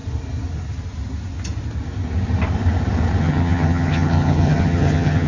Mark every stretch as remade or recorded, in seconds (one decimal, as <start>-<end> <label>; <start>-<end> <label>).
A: 0.0-3.2 recorded; 3.2-5.3 remade